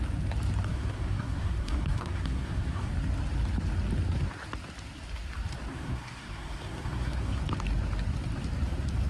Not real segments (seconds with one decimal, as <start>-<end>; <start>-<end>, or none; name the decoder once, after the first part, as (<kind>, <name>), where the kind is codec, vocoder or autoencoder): 0.7-2.9 (codec, SNAC); 5.7-7.4